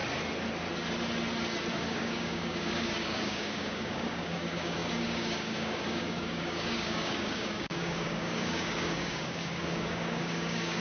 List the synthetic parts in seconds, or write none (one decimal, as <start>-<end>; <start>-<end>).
1.7-10.8